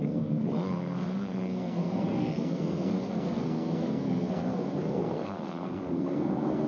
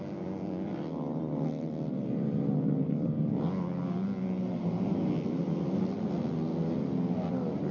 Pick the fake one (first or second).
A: first